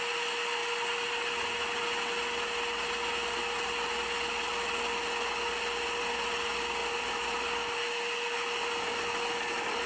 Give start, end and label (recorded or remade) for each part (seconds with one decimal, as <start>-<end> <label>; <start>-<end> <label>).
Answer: 0.0-9.9 recorded